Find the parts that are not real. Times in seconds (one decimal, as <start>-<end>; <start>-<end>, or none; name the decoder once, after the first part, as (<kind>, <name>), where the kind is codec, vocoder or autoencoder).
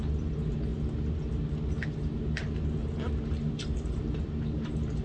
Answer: none